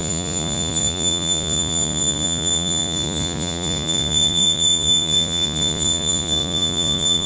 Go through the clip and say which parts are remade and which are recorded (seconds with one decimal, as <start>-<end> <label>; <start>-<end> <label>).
0.0-7.3 remade